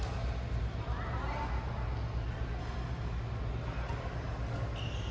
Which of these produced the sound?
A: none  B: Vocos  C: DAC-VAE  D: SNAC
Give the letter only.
A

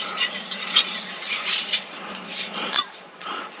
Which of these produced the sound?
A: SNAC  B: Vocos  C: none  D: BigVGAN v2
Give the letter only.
B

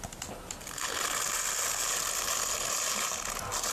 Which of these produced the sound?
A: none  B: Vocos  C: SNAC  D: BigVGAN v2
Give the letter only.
A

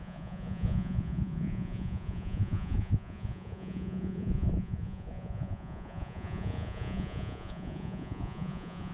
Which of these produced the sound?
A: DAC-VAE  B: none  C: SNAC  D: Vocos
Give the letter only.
D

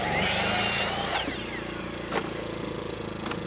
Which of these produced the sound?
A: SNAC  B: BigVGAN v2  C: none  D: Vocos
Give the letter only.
C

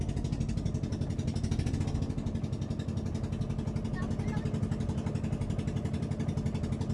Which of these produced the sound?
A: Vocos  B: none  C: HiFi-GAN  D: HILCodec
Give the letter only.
B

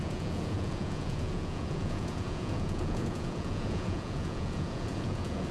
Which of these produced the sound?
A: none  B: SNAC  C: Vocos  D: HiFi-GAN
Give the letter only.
C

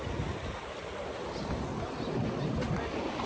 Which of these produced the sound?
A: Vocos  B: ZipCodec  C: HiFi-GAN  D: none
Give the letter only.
D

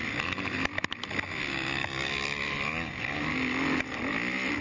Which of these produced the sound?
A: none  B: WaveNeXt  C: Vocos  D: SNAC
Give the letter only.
A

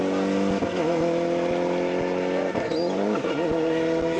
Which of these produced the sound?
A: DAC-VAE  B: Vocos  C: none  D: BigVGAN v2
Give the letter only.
C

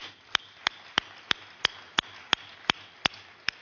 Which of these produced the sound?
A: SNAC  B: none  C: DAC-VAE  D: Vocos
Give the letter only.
B